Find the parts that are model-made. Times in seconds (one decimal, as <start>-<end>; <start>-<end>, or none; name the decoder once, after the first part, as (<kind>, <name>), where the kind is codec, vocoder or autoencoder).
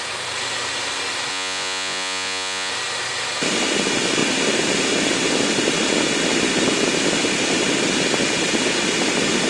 1.3-2.7 (vocoder, Vocos)